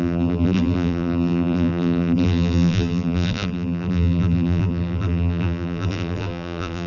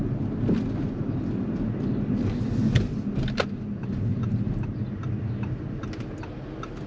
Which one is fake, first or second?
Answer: first